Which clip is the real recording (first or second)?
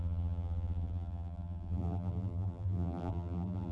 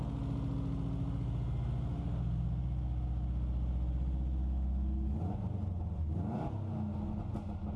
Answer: second